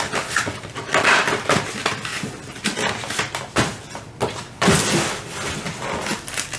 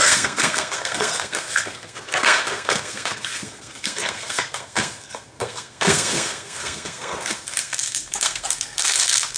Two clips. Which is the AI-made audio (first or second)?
second